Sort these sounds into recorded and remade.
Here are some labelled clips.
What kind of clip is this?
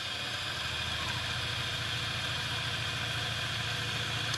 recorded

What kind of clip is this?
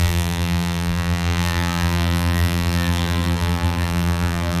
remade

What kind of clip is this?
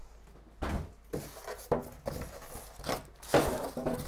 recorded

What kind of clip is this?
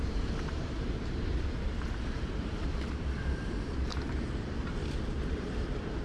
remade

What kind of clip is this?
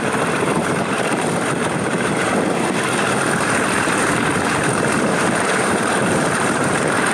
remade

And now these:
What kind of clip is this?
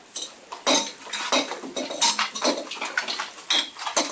recorded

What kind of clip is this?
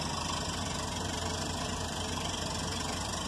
remade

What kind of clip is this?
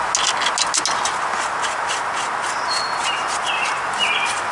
recorded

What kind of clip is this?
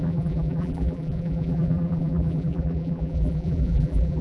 remade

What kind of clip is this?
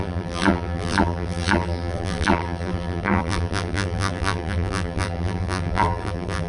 remade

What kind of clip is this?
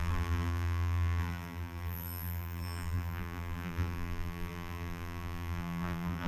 remade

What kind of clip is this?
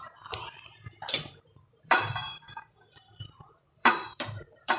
remade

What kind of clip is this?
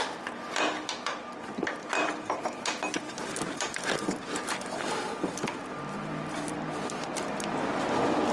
recorded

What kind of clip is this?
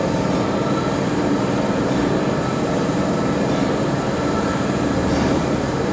remade